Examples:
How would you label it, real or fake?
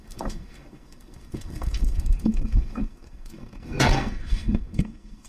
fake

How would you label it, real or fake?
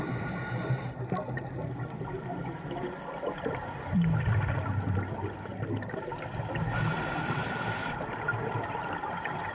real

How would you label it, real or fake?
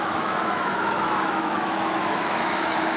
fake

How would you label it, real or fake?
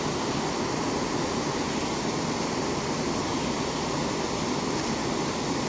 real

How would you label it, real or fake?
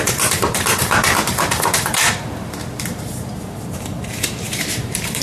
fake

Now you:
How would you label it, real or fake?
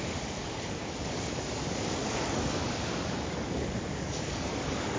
fake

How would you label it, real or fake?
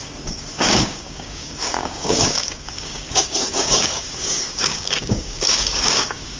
fake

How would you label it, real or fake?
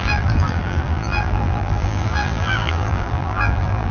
fake